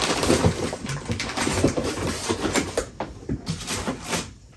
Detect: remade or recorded remade